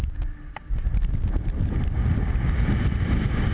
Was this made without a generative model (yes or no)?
yes